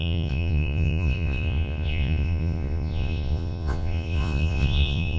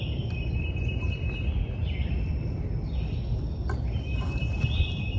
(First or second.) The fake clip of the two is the first